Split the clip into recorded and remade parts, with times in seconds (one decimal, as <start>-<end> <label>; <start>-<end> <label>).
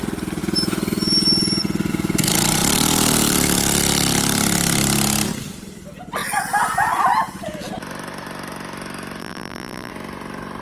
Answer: 0.0-9.2 recorded; 9.2-9.9 remade; 9.9-10.6 recorded